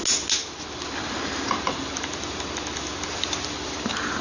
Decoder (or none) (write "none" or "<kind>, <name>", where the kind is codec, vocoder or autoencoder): none